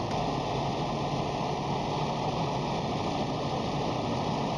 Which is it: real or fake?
real